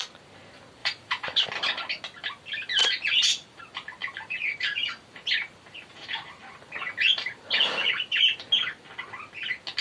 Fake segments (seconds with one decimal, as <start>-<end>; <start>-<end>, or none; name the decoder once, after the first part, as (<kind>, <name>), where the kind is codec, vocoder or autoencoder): 0.8-1.4 (vocoder, BigVGAN v2); 2.8-3.6; 4.0-8.6